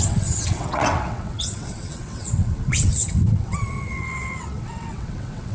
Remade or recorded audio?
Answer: remade